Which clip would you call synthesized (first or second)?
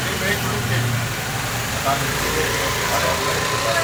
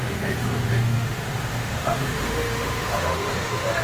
second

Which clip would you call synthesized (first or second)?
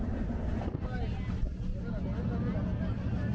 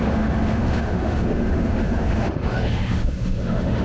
second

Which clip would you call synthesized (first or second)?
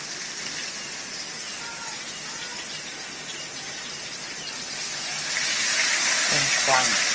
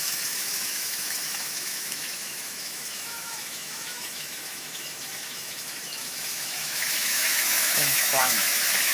second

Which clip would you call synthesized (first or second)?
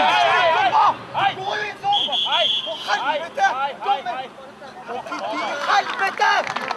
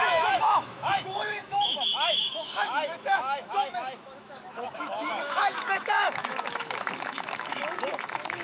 second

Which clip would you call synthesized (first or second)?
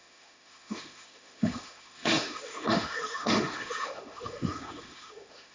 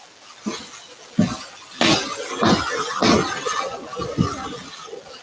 first